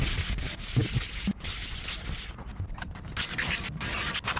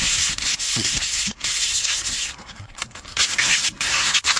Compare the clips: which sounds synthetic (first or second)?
second